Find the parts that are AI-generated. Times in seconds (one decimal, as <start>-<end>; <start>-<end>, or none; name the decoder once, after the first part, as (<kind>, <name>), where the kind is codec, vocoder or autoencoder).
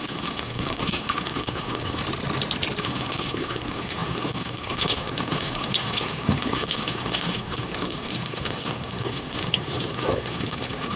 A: 0.0-2.0 (codec, SNAC); 2.8-11.0